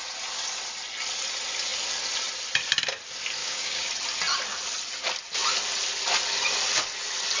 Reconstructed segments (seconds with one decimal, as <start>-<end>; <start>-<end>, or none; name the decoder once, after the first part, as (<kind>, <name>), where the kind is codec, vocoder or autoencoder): 3.4-3.9 (codec, DAC)